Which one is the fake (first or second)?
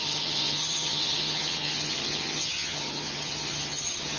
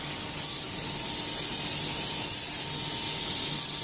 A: first